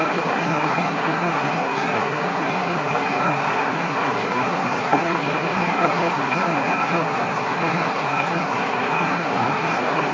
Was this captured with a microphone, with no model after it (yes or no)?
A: no